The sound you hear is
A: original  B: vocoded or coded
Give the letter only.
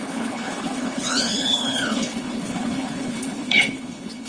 B